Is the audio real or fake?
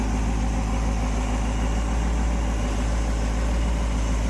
real